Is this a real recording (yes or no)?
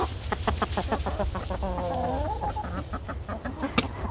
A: yes